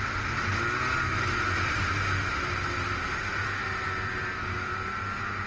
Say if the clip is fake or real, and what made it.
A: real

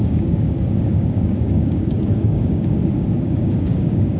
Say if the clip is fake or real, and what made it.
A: fake, codec, DAC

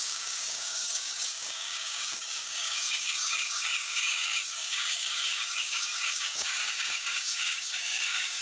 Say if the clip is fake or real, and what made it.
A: fake, codec, DAC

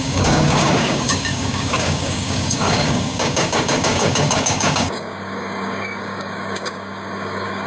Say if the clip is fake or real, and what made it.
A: fake, codec, DAC